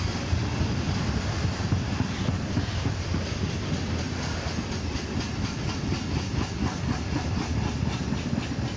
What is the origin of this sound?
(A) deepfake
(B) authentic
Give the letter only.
B